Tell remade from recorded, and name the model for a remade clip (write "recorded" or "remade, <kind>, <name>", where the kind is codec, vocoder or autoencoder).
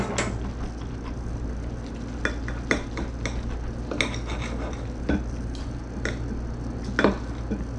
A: recorded